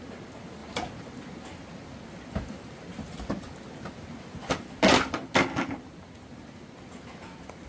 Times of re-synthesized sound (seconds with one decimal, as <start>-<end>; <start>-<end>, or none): none